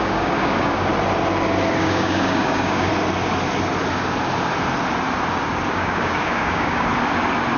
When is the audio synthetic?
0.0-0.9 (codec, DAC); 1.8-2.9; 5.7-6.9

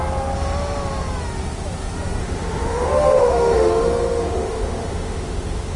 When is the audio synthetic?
2.2-5.8 (autoencoder, DAC-VAE)

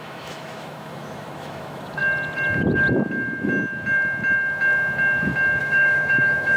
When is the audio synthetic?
0.0-2.0 (autoencoder, DAC-VAE); 5.6-6.6

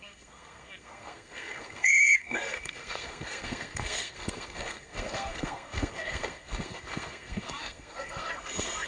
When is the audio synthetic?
0.0-8.9 (codec, SNAC)

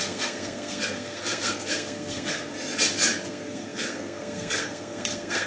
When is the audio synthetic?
0.0-2.5 (codec, SNAC); 3.3-5.5